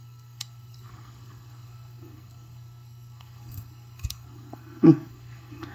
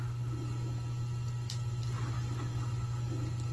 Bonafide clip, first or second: second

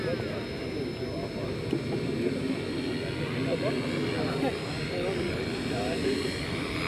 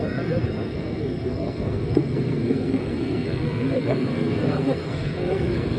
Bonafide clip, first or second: first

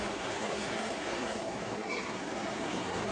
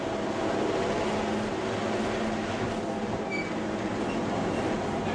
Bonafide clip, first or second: second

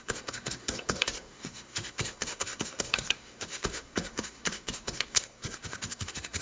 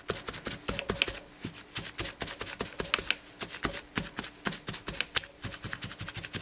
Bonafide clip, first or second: second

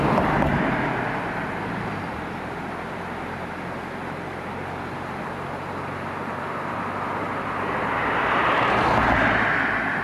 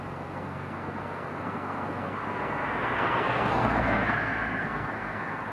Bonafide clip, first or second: first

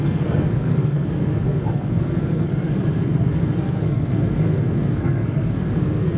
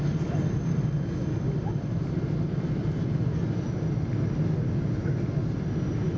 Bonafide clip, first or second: second